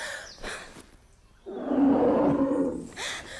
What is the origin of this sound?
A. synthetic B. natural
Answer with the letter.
A